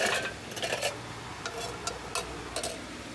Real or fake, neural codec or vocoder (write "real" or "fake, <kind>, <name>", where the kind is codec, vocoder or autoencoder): real